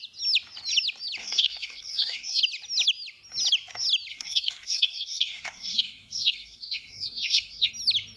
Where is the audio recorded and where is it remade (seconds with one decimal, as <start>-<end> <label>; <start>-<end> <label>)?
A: 0.0-1.2 recorded; 1.2-2.4 remade; 2.4-4.1 recorded; 4.1-7.7 remade; 7.7-8.2 recorded